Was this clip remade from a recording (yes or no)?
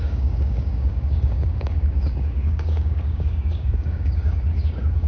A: yes